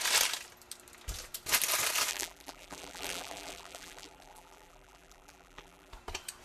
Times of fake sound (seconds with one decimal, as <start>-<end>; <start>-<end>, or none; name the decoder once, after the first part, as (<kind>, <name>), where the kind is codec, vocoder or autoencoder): 2.1-5.9 (vocoder, BigVGAN v2)